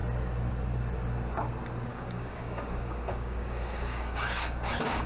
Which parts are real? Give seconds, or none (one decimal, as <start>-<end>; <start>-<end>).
0.0-1.9